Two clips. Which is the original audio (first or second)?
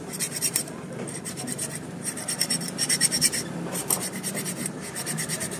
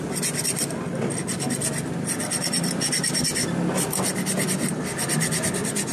second